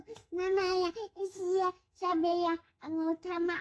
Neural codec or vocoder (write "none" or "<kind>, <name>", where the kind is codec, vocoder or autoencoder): codec, SNAC